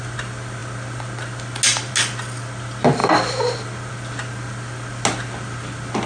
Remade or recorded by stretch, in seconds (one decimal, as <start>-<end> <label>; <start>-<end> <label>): 0.0-6.1 recorded